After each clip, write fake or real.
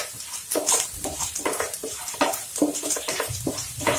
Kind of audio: fake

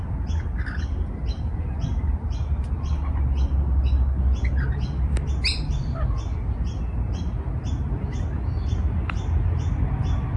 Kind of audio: real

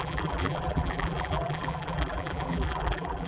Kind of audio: fake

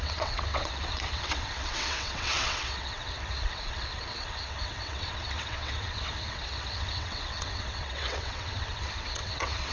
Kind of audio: fake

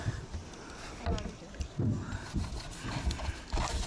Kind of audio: real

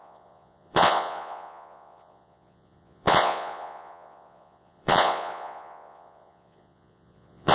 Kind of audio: fake